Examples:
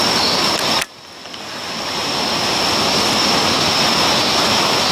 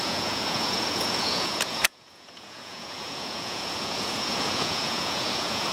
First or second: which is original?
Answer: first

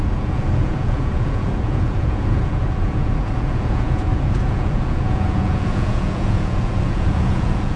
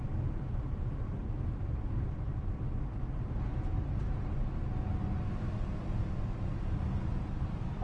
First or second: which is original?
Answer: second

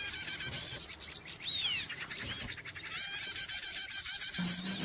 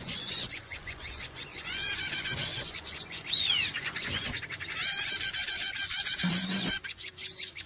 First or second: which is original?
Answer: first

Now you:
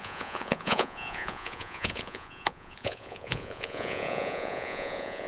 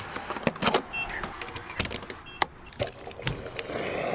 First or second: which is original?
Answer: second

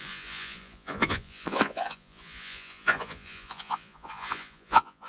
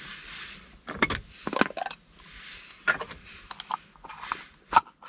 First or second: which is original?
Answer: second